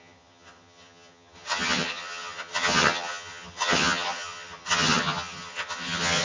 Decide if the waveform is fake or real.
fake